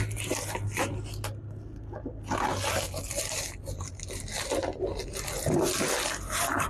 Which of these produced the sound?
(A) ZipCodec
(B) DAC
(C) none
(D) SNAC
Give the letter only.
C